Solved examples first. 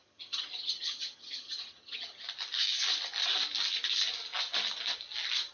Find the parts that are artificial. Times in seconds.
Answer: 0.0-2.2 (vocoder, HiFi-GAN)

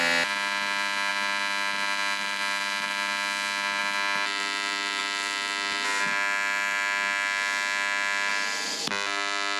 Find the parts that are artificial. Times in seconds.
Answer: none

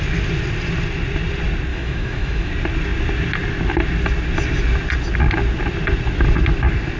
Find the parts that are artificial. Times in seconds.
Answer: 1.7-2.5 (autoencoder, DAC-VAE)

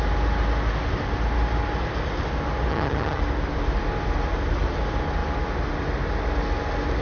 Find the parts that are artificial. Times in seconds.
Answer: 2.7-3.2 (vocoder, HiFi-GAN)

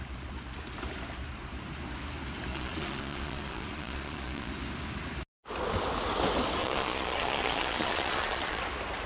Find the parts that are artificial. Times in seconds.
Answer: 2.5-4.5 (vocoder, Vocos); 6.6-8.6

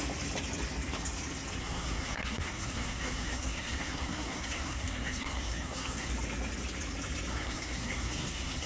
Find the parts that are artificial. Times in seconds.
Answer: 1.6-6.1 (codec, SNAC); 7.3-8.7